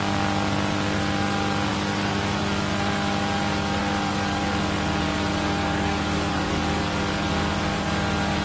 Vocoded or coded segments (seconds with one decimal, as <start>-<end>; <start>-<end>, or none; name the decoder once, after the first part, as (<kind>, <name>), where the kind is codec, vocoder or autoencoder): 1.7-2.4 (codec, DAC); 5.3-6.6